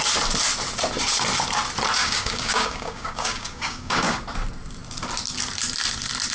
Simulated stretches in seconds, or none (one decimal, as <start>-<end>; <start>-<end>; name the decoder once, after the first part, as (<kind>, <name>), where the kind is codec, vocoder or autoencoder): 2.0-4.2 (codec, DAC)